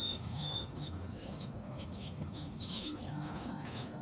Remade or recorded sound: remade